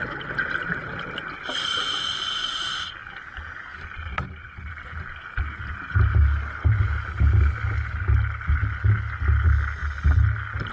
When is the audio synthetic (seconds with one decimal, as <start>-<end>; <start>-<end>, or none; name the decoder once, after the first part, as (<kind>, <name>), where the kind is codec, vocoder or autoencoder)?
none